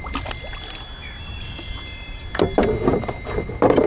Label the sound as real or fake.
real